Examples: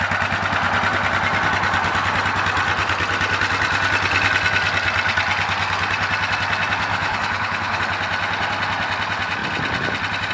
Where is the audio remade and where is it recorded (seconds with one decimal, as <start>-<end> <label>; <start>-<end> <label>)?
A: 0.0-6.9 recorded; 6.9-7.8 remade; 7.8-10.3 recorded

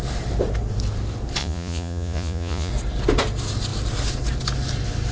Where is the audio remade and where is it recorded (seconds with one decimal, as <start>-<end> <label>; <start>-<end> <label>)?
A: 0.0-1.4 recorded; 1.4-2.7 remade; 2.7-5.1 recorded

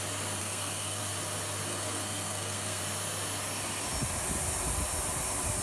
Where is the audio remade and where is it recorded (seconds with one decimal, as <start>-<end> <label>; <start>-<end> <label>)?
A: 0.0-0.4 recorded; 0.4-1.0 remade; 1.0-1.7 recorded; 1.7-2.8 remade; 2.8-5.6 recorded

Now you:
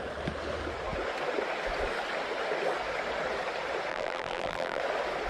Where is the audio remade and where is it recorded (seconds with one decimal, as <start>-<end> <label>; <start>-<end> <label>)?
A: 0.0-3.9 recorded; 3.9-4.8 remade; 4.8-5.3 recorded